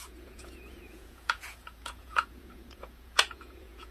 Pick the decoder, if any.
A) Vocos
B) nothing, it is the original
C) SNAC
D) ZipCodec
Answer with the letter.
A